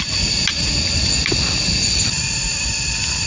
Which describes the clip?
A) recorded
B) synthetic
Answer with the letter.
A